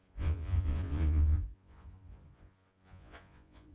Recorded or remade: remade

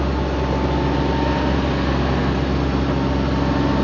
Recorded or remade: recorded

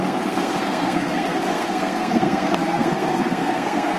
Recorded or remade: remade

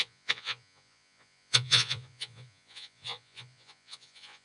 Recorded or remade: remade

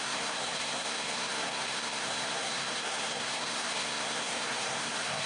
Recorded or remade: remade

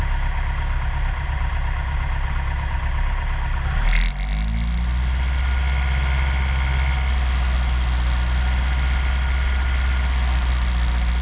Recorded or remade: recorded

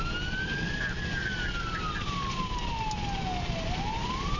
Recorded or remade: recorded